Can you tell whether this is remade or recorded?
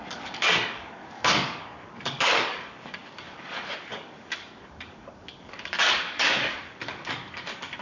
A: remade